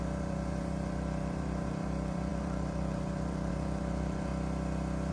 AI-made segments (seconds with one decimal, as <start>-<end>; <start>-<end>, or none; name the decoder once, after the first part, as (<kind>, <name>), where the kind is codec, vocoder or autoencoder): 0.0-4.3 (vocoder, BigVGAN v2)

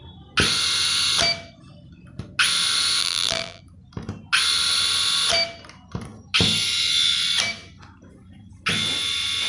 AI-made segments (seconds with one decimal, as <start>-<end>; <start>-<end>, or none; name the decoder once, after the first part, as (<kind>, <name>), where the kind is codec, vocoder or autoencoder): 3.0-3.6 (vocoder, BigVGAN v2)

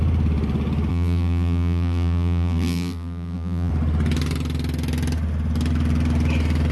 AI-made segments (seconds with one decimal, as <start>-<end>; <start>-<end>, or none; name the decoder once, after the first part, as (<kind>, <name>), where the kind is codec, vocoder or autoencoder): 0.9-3.7 (vocoder, BigVGAN v2)

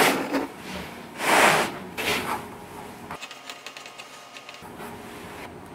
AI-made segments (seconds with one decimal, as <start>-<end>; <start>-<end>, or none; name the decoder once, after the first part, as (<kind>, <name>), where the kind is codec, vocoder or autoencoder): none

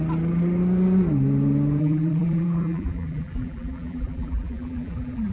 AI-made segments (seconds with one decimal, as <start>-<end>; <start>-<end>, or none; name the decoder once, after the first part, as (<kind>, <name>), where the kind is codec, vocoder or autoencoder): 1.8-5.3 (vocoder, BigVGAN v2)

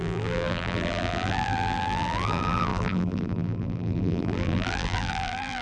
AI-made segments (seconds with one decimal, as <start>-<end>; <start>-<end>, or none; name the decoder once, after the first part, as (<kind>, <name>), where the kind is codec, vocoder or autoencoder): 0.0-5.6 (vocoder, BigVGAN v2)